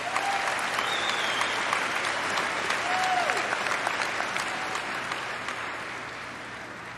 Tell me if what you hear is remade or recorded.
recorded